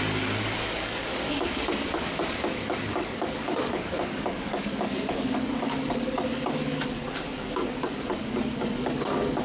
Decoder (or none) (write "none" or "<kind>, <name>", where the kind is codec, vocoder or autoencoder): codec, DAC